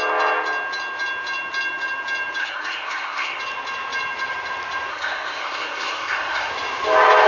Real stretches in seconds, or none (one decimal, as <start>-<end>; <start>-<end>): 0.0-2.4; 3.4-4.9; 6.5-7.3